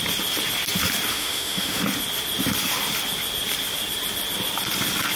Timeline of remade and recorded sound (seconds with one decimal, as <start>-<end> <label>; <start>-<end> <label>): 0.0-1.1 recorded; 1.1-1.8 remade; 1.8-5.2 recorded